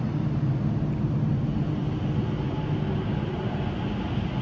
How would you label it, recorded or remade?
recorded